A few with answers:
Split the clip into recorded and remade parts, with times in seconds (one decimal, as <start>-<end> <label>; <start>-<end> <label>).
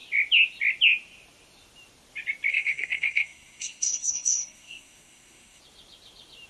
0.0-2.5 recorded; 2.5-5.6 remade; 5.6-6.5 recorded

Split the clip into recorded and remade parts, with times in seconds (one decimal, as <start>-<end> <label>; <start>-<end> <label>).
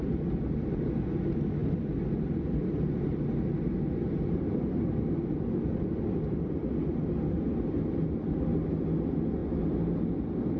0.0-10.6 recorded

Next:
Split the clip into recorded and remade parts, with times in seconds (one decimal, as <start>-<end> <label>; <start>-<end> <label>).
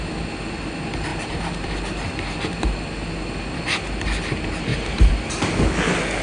0.0-1.1 recorded; 1.1-2.8 remade; 2.8-4.7 recorded; 4.7-5.2 remade; 5.2-6.2 recorded